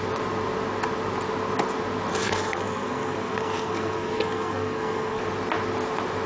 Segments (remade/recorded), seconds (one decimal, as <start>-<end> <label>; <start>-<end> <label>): 0.0-2.1 recorded; 2.1-5.2 remade; 5.2-6.3 recorded